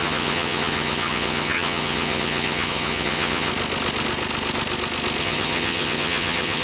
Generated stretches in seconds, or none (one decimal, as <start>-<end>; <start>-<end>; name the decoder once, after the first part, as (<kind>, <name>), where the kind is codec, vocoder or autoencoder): 0.0-3.5 (vocoder, HiFi-GAN); 5.2-6.6